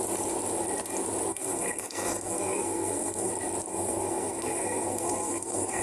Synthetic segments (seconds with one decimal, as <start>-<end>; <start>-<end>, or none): 1.3-3.3; 3.7-5.8